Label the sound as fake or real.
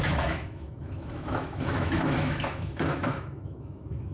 fake